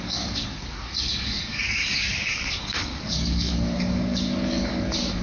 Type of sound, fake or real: fake